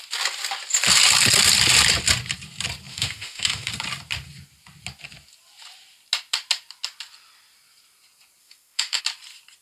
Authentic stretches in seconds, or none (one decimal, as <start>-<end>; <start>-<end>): 0.0-2.9; 3.7-8.4; 9.0-9.6